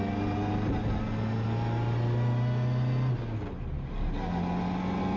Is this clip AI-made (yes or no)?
no